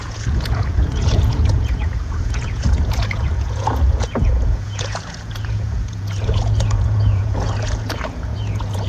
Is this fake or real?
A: fake